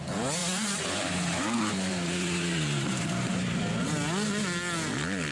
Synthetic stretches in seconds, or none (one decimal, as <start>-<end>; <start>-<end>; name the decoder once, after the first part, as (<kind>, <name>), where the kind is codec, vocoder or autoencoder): 0.4-3.6 (vocoder, BigVGAN v2)